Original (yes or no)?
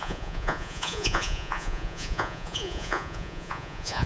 no